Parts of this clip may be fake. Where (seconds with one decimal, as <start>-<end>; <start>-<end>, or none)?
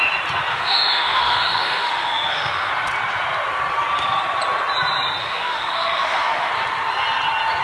0.5-2.7; 5.2-6.5